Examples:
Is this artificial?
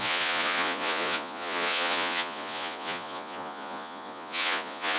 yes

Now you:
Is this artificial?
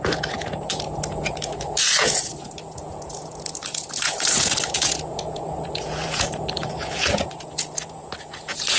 yes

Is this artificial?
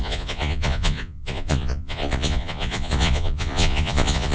yes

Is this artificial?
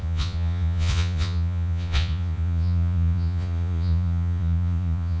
yes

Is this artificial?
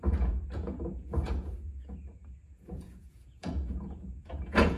yes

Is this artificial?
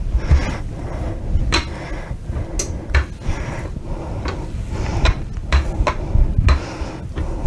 no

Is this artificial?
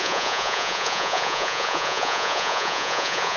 yes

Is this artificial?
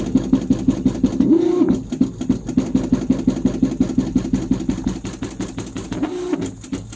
no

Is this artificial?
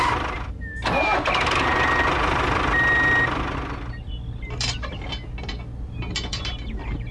no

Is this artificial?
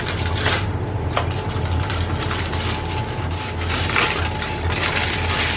no